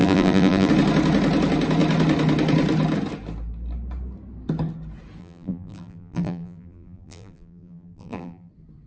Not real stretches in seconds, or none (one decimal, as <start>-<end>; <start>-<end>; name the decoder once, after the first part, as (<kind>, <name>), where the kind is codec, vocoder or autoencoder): 0.0-0.7 (vocoder, BigVGAN v2); 5.2-8.5